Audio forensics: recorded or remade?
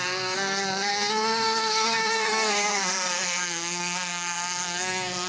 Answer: remade